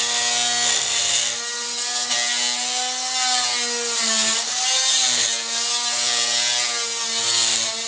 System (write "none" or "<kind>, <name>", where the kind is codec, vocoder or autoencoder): none